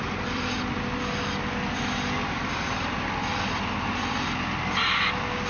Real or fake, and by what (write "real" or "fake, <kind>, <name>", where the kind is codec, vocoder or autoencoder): real